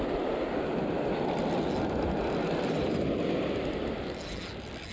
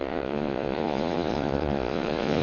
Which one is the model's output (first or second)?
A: second